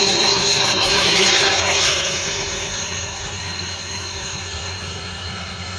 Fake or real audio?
fake